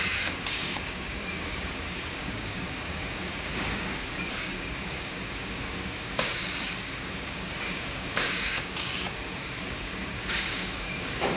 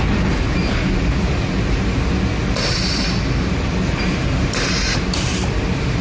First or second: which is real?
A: second